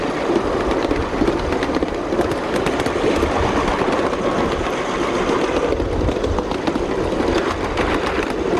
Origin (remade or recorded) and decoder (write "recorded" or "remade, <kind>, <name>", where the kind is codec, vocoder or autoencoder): recorded